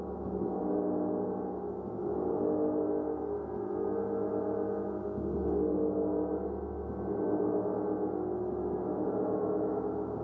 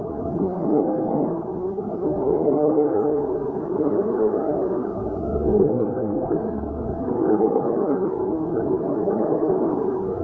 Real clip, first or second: first